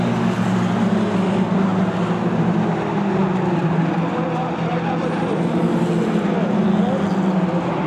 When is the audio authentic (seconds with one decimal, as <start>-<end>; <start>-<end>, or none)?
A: 0.0-7.9